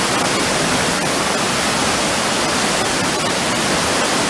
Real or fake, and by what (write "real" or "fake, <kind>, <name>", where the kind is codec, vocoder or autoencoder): real